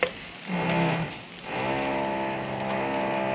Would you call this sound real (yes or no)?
yes